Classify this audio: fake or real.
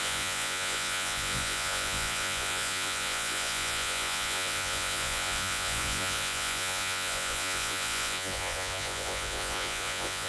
fake